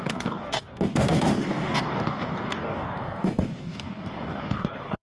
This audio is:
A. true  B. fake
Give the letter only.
B